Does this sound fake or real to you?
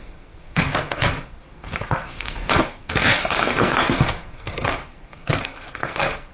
fake